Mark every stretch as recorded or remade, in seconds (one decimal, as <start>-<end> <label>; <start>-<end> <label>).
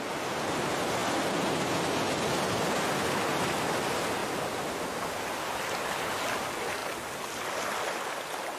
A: 0.0-8.6 recorded